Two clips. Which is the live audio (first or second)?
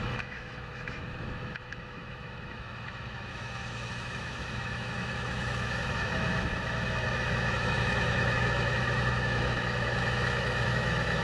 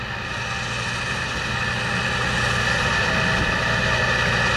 second